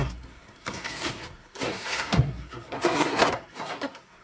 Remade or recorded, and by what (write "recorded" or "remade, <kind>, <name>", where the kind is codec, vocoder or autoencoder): remade, codec, SNAC